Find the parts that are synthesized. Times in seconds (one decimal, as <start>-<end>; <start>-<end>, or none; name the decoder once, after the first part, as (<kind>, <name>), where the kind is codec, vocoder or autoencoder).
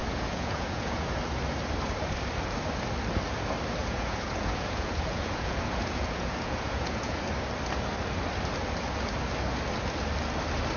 0.0-1.2 (vocoder, Vocos); 3.8-7.2